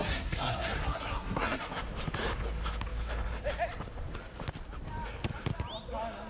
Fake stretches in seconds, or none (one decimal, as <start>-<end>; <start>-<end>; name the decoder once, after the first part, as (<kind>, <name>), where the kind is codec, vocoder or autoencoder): 0.0-1.8 (codec, SNAC)